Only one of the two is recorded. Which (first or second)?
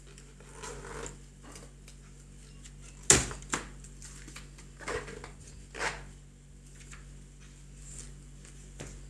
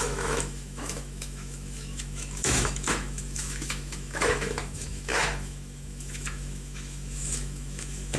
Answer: first